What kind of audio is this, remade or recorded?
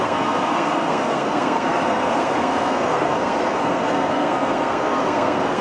remade